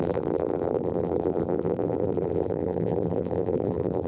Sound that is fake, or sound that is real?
fake